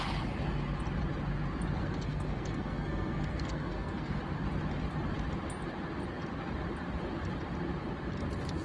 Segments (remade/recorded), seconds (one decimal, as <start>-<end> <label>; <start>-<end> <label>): 0.0-1.8 recorded; 1.8-4.2 remade; 4.2-8.6 recorded